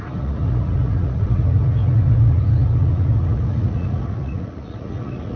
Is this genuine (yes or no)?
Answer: no